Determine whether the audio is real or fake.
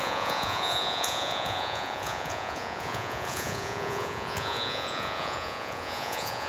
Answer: fake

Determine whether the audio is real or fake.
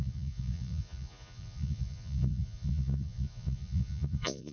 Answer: fake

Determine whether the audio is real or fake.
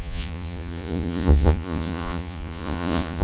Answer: fake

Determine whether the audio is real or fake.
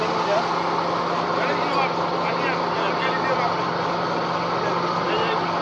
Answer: real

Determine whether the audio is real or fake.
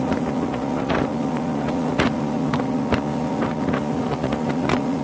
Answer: fake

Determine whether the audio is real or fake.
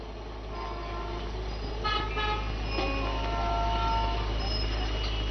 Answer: real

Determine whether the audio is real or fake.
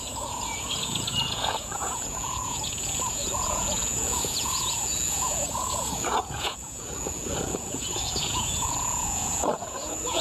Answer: fake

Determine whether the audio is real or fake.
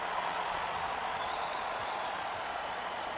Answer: fake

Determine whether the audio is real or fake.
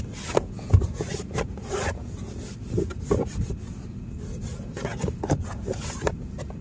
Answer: real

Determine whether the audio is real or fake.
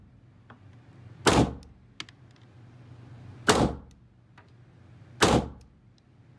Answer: real